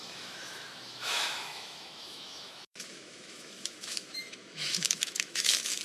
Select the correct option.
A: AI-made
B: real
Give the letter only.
A